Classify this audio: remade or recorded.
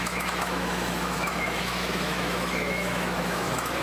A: remade